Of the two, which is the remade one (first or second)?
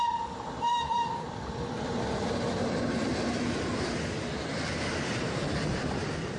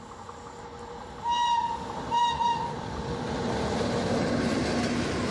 first